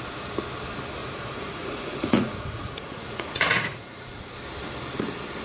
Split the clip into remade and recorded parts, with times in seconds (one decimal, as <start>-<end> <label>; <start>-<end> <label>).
0.0-1.0 recorded; 1.0-4.2 remade; 4.2-5.4 recorded